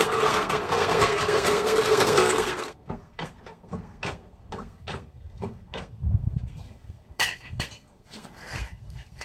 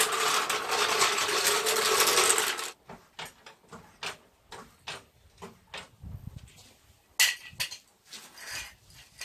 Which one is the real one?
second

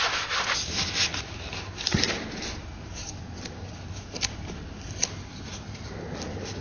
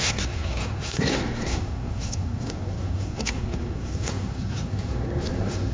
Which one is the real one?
first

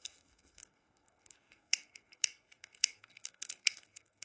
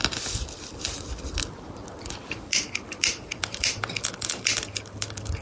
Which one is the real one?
second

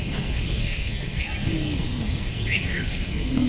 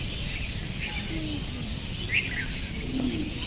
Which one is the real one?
second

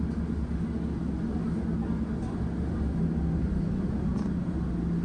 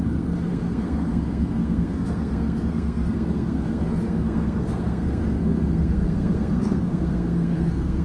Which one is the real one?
first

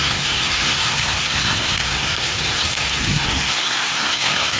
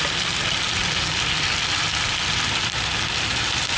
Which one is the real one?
second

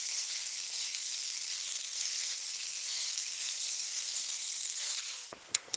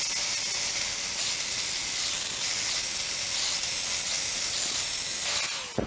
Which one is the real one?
second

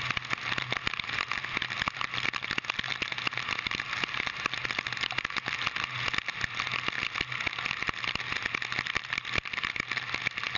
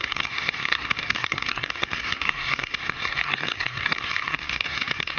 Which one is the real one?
first